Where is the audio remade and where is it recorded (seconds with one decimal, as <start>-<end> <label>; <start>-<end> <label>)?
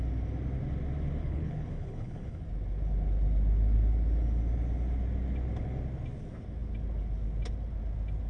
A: 0.0-1.2 recorded; 1.2-2.4 remade; 2.4-8.3 recorded